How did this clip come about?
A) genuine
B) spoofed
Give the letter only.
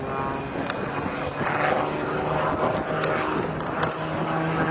A